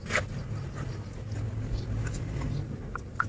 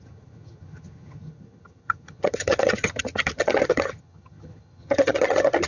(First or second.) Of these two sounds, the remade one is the second